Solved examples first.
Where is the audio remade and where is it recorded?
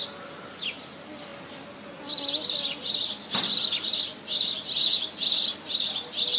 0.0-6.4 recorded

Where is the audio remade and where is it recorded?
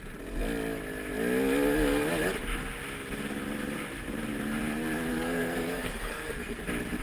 0.0-5.1 recorded; 5.1-6.6 remade; 6.6-7.0 recorded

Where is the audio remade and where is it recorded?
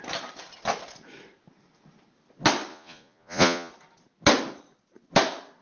0.0-2.7 recorded; 2.7-3.7 remade; 3.7-5.6 recorded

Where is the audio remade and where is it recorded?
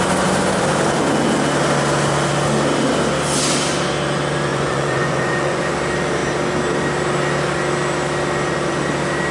0.0-4.5 recorded; 4.5-5.6 remade; 5.6-9.3 recorded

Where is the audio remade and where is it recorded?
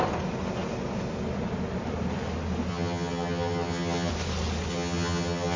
0.0-2.7 recorded; 2.7-4.1 remade; 4.1-4.7 recorded; 4.7-5.6 remade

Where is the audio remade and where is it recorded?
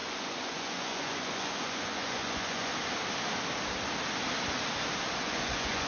0.0-2.7 remade; 2.7-5.2 recorded; 5.2-5.9 remade